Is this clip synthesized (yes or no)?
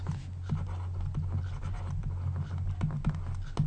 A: no